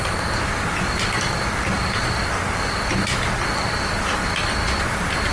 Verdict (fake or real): real